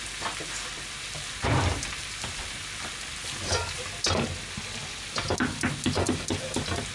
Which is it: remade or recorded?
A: recorded